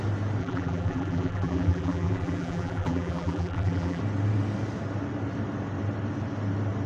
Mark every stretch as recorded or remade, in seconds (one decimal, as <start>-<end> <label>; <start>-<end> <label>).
0.0-0.4 recorded; 0.4-4.0 remade; 4.0-6.9 recorded